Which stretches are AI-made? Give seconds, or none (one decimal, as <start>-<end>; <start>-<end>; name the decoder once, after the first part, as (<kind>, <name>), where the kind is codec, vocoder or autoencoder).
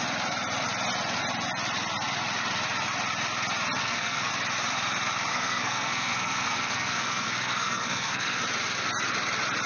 3.8-4.3 (codec, SNAC); 5.3-8.4